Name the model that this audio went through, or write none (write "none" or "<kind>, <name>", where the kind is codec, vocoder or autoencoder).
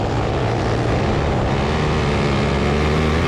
none